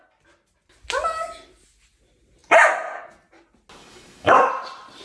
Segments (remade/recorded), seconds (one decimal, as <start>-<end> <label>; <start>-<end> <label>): 0.0-3.8 recorded; 3.8-4.5 remade; 4.5-5.0 recorded